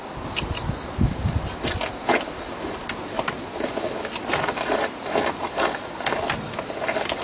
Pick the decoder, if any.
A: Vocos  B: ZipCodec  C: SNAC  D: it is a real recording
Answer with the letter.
D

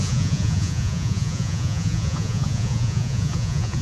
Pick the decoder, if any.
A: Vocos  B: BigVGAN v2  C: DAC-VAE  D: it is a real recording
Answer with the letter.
A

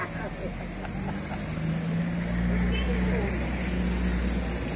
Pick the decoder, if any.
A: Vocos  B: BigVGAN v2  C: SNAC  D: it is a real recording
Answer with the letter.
D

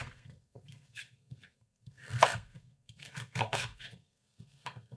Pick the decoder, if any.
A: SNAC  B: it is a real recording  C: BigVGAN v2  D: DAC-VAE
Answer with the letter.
A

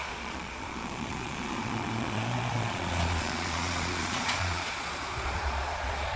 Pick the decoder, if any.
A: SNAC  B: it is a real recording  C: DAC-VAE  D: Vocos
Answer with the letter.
D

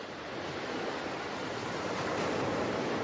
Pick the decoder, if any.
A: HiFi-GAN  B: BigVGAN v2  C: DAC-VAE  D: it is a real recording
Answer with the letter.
D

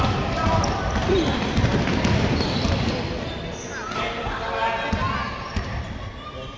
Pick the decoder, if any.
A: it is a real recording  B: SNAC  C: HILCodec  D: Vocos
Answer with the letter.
A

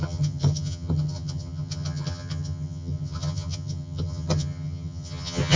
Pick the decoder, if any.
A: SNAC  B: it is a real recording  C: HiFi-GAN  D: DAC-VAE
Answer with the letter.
C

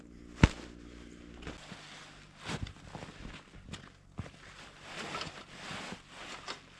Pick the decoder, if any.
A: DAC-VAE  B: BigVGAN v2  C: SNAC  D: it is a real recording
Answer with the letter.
D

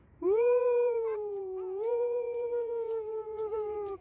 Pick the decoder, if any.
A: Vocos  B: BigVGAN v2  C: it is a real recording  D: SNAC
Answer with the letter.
A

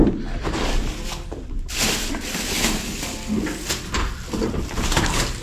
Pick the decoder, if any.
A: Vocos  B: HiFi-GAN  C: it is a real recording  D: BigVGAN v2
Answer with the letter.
D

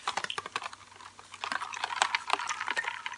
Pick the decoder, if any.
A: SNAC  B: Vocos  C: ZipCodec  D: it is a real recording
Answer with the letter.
D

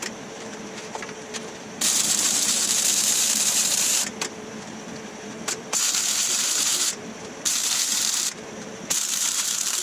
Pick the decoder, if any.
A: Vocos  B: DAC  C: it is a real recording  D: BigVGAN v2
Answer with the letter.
D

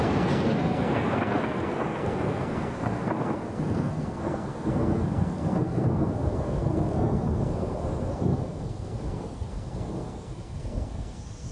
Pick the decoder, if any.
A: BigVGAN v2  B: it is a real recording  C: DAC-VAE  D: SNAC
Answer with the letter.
D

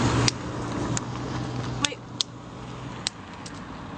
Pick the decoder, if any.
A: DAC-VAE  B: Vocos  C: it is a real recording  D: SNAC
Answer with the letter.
C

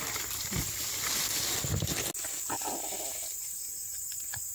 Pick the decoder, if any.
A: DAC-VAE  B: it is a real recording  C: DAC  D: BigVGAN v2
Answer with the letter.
B